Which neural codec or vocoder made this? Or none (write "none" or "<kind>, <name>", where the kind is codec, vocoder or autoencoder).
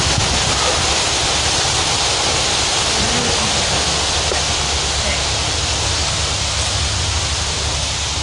none